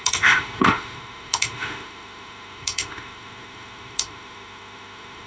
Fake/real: fake